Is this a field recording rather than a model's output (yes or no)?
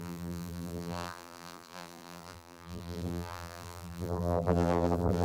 no